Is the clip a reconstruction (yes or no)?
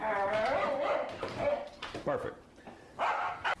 no